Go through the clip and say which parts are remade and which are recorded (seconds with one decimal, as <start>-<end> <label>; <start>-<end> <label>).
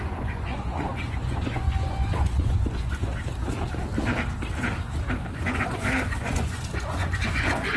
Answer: 0.0-3.1 remade; 3.1-5.3 recorded; 5.3-7.8 remade